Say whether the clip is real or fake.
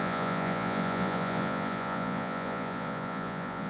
fake